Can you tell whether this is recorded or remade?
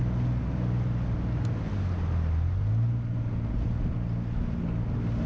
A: recorded